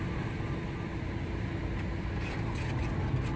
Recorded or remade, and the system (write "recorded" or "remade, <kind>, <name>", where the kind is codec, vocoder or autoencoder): recorded